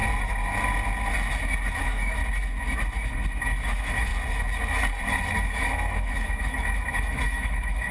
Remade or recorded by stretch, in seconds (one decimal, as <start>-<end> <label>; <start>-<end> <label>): 0.0-1.8 recorded; 1.8-2.2 remade; 2.2-3.3 recorded; 3.3-4.1 remade; 4.1-5.2 recorded; 5.2-7.9 remade

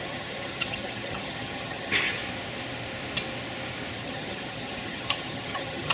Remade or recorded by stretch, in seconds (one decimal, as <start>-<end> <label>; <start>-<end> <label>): 0.0-2.2 remade; 2.2-3.9 recorded; 3.9-5.9 remade

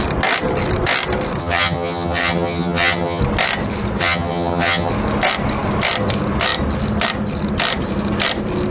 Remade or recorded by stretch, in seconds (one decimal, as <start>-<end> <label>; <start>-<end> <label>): 0.0-1.4 recorded; 1.4-3.2 remade; 3.2-4.0 recorded; 4.0-4.9 remade; 4.9-8.7 recorded

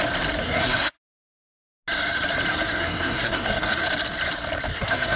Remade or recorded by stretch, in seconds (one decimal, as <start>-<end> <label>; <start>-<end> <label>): 0.0-0.4 recorded; 0.4-0.9 remade; 0.9-2.5 recorded; 2.5-3.8 remade; 3.8-4.7 recorded; 4.7-5.2 remade

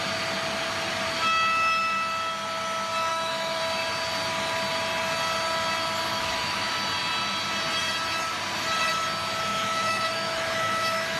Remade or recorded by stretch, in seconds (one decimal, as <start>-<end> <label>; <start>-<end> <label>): 0.0-3.1 recorded; 3.1-3.6 remade; 3.6-6.1 recorded; 6.1-6.7 remade; 6.7-9.5 recorded; 9.5-11.2 remade